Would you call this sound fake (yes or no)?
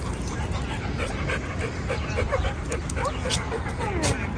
no